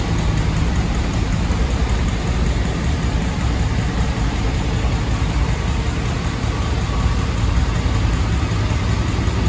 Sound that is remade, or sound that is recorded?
recorded